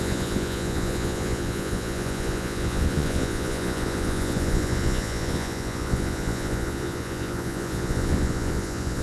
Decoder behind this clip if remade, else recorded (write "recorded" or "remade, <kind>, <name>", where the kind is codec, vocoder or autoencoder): remade, vocoder, Vocos